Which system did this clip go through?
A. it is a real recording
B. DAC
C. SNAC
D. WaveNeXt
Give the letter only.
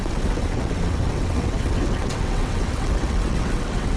D